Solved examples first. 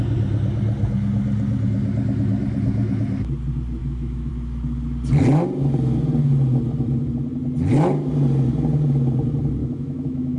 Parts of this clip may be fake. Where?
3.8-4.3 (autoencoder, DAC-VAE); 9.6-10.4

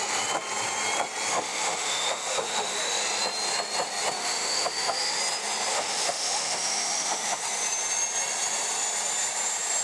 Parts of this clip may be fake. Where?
1.3-3.0 (autoencoder, DAC-VAE); 4.2-5.2; 5.7-7.4

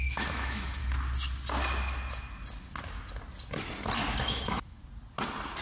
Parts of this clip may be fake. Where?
0.0-0.8 (autoencoder, DAC-VAE); 4.2-4.8

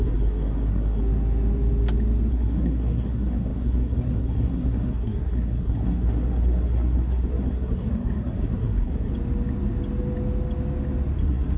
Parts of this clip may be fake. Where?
0.0-1.0 (codec, SNAC); 2.3-9.1; 11.2-11.6

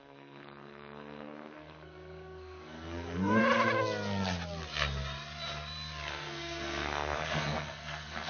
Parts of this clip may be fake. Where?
0.0-3.4 (codec, SNAC); 6.1-8.3